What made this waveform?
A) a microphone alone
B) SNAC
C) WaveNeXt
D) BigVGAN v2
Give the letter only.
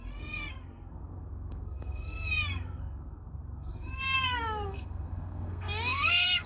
B